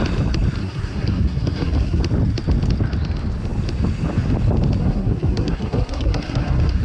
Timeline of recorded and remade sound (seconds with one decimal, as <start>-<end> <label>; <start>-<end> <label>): 0.0-0.6 recorded; 0.6-2.0 remade; 2.0-4.8 recorded; 4.8-6.8 remade